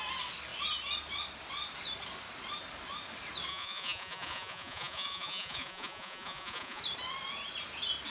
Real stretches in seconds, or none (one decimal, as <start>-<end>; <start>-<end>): 0.0-3.5; 6.8-8.1